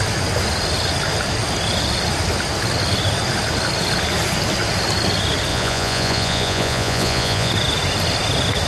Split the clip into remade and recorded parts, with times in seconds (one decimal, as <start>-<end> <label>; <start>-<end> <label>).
0.0-5.5 recorded; 5.5-7.5 remade; 7.5-8.7 recorded